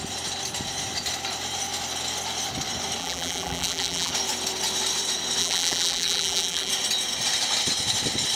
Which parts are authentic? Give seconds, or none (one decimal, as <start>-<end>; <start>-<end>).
0.0-3.0; 4.1-5.4; 6.7-8.3